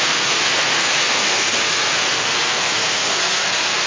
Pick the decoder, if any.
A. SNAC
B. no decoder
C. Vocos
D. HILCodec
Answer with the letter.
A